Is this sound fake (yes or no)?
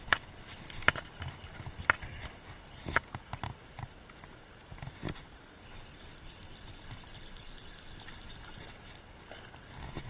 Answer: no